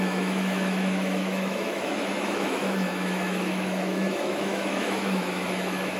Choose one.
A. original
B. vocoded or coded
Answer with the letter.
B